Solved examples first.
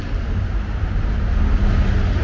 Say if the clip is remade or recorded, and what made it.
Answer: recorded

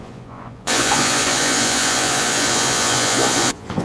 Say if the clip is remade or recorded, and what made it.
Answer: remade, vocoder, Vocos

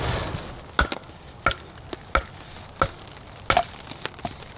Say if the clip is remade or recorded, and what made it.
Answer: recorded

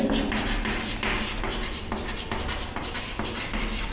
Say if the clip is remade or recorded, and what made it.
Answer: recorded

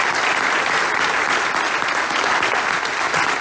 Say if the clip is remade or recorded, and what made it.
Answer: recorded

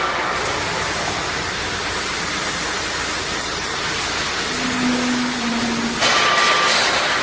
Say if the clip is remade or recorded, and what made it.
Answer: recorded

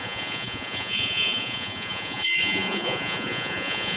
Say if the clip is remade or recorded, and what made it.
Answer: remade, vocoder, Vocos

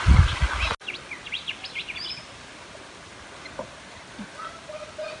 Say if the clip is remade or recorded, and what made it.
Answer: recorded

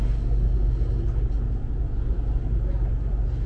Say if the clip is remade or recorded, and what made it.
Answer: recorded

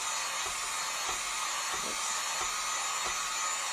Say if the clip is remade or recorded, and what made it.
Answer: recorded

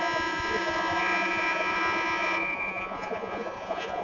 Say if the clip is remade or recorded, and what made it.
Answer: remade, vocoder, Vocos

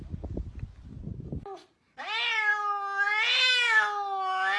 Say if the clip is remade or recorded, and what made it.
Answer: recorded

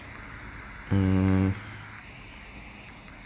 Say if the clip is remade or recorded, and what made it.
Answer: recorded